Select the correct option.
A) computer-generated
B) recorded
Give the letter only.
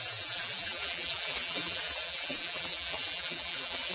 A